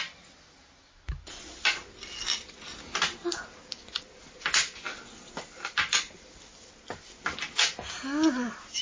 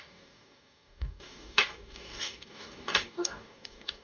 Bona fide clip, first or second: first